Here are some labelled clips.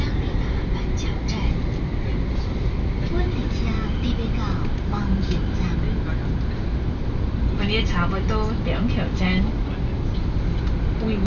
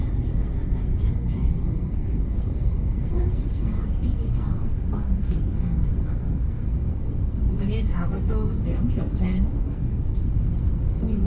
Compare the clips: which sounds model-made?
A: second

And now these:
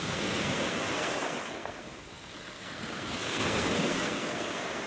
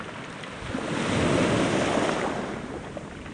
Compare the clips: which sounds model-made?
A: first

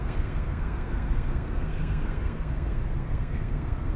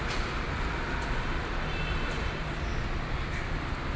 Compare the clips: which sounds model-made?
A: first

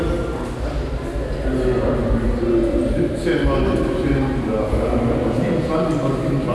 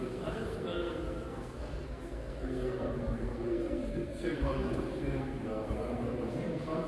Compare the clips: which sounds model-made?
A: second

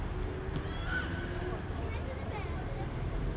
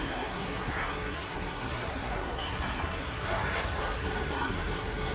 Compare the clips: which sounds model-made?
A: second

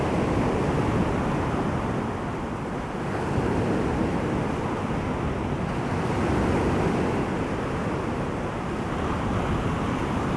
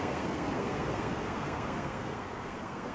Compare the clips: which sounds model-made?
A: second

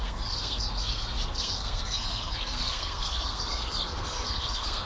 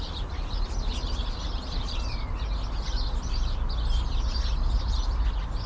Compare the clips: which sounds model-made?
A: first